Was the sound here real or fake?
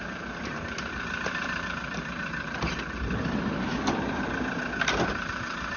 fake